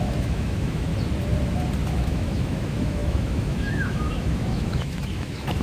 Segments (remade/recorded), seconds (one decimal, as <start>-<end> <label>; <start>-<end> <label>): 0.0-0.9 remade; 0.9-1.9 recorded; 1.9-5.6 remade